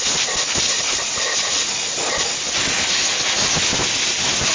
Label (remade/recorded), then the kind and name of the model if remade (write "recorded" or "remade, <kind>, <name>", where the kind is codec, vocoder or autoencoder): recorded